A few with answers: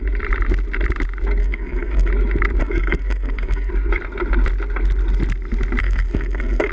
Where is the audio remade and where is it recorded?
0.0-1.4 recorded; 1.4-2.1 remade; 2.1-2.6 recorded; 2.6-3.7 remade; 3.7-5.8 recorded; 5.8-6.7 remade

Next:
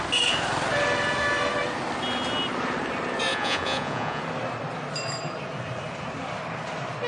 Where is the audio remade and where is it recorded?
0.0-3.3 recorded; 3.3-4.2 remade; 4.2-7.1 recorded